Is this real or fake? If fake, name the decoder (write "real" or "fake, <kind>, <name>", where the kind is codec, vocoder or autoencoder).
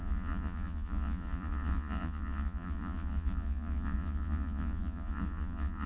fake, vocoder, Vocos